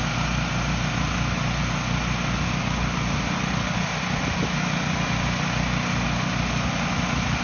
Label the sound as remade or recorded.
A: recorded